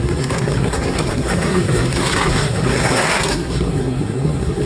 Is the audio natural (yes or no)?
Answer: no